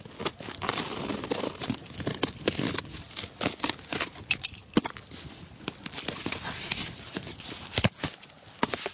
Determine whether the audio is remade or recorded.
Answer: recorded